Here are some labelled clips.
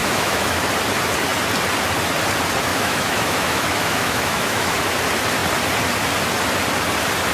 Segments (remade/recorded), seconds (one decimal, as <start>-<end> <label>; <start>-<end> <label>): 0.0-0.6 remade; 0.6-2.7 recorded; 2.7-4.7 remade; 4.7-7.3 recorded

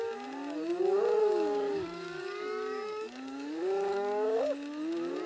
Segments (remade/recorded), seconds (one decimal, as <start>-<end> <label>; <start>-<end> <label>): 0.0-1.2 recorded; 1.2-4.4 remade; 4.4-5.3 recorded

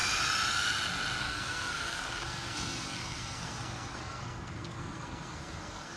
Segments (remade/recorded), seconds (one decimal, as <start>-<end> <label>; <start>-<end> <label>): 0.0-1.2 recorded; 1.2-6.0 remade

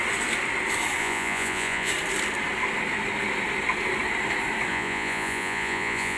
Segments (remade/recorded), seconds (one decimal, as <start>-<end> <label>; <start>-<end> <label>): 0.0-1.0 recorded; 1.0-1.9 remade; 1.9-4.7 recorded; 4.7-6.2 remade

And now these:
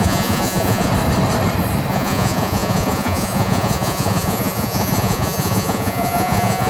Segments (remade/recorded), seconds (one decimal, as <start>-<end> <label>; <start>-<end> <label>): 0.0-0.9 remade; 0.9-1.9 recorded; 1.9-6.7 remade

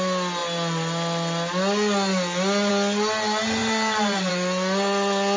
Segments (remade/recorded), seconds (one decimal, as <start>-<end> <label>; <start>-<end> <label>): 0.0-3.6 recorded; 3.6-4.3 remade; 4.3-5.4 recorded

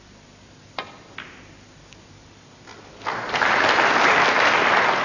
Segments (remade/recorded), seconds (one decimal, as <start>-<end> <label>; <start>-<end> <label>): 0.0-5.0 recorded